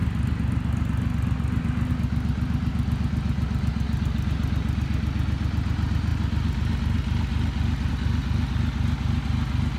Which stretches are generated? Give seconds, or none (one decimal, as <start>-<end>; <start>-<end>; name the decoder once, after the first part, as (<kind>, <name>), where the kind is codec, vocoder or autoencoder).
none